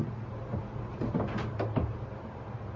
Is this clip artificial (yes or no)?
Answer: yes